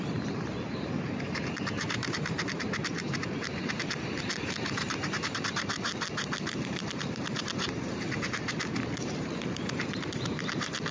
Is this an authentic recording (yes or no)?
no